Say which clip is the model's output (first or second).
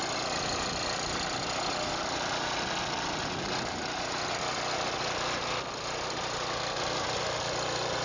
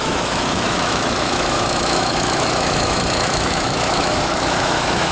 second